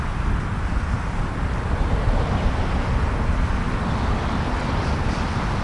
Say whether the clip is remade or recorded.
recorded